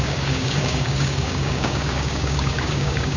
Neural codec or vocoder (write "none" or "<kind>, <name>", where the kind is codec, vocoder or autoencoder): codec, DAC